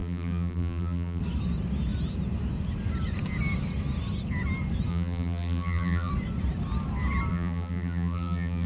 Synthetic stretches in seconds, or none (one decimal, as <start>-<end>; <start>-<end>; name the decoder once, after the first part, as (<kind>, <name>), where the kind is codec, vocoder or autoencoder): 0.0-1.2 (vocoder, BigVGAN v2); 4.9-6.1; 7.3-8.7